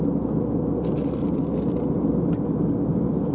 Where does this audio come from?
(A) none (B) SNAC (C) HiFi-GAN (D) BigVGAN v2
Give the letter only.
A